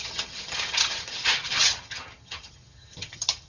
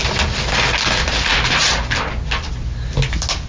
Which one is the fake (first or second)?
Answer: first